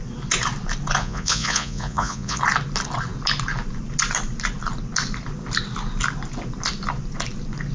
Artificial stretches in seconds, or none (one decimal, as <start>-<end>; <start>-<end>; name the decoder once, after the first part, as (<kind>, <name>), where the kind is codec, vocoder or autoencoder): 1.0-2.4 (vocoder, Vocos)